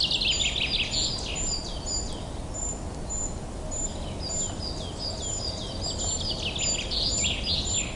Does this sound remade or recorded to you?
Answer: recorded